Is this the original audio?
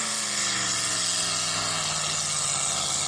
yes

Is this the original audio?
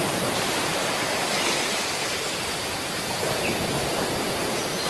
no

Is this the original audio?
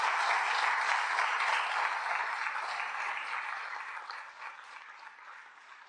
yes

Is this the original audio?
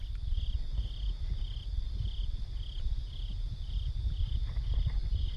yes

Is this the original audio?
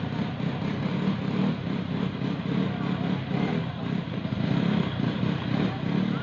yes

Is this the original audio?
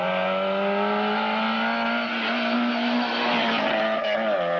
yes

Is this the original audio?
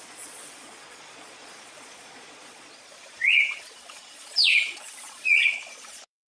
no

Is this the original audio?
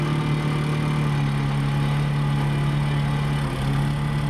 yes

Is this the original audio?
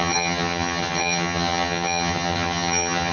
no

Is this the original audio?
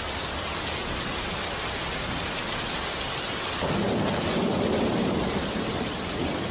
yes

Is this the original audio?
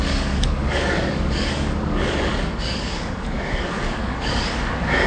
no